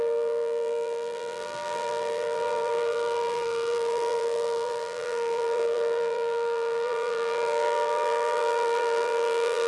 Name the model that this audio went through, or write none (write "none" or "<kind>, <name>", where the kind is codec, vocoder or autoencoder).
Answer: vocoder, BigVGAN v2